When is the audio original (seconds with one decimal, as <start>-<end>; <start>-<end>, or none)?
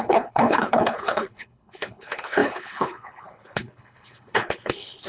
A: none